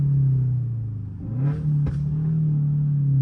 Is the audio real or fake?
real